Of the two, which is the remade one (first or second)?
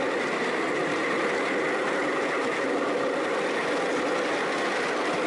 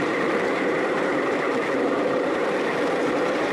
second